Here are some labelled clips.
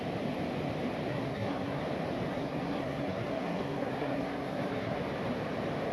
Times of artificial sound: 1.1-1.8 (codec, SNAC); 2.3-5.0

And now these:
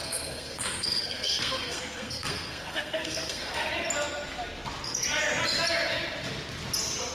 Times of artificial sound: 0.0-3.7 (codec, SNAC)

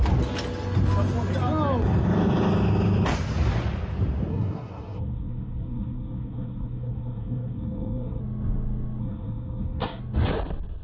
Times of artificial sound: 4.3-8.2 (codec, SNAC); 9.0-10.0

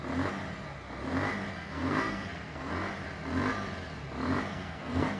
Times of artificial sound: 1.5-2.7 (codec, SNAC); 4.5-5.2